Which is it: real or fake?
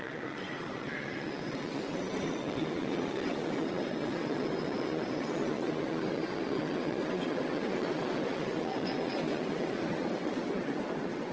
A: fake